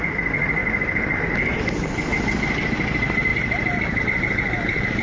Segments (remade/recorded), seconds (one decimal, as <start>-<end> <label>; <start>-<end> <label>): 0.0-0.6 recorded; 0.6-1.2 remade; 1.2-3.3 recorded; 3.3-4.0 remade; 4.0-5.0 recorded